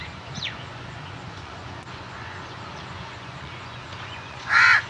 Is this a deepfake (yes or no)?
yes